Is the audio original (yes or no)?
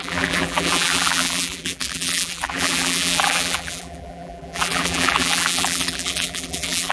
no